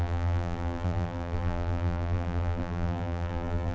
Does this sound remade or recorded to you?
remade